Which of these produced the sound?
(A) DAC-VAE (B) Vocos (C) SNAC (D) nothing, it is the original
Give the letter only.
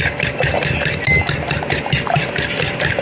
D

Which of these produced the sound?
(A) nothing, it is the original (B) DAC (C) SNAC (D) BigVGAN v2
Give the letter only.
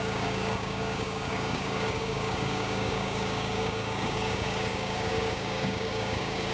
B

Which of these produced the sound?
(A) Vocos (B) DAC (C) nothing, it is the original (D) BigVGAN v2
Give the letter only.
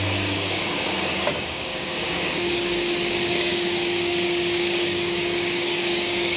B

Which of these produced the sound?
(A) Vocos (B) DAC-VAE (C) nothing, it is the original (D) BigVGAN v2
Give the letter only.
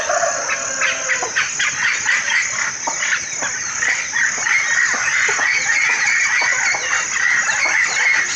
C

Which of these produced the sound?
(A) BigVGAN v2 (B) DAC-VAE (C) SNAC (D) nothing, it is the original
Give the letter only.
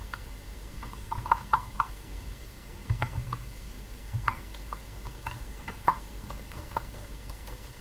C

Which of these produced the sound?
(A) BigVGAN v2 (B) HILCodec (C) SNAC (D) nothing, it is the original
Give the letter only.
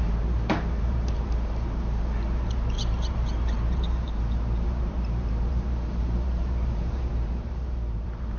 A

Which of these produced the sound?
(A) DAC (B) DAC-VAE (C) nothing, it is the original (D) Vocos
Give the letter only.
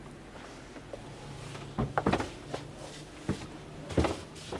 C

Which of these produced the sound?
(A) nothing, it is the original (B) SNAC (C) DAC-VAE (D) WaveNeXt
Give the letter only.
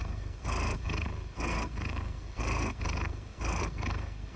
B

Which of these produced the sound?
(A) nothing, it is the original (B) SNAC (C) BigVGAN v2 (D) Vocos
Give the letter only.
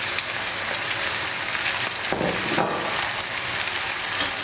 A